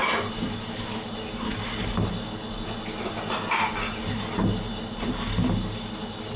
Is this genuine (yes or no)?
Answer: yes